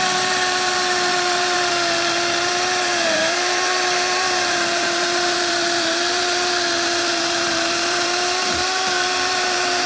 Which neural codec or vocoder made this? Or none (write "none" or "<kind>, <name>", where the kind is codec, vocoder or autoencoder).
vocoder, BigVGAN v2